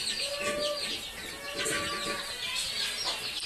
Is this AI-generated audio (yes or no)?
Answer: no